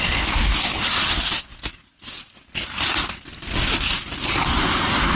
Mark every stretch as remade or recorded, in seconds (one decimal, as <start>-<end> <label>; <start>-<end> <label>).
0.0-5.2 recorded